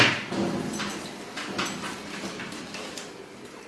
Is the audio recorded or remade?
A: recorded